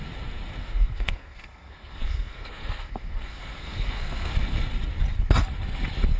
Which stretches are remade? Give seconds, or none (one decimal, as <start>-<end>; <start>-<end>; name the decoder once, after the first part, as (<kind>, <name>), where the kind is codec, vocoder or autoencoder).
0.6-4.3 (codec, SNAC)